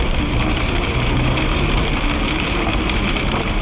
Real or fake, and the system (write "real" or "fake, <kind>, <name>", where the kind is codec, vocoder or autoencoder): fake, vocoder, BigVGAN v2